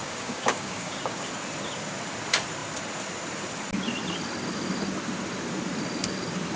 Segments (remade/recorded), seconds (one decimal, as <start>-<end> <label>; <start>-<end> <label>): 0.0-1.3 remade; 1.3-6.6 recorded